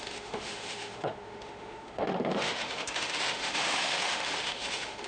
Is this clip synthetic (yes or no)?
yes